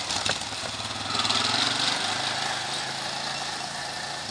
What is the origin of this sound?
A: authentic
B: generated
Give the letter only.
A